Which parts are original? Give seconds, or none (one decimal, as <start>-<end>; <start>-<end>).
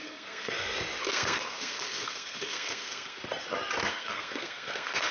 0.5-1.0; 3.2-3.9